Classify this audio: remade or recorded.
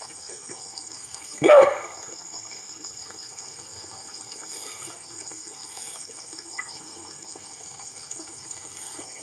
remade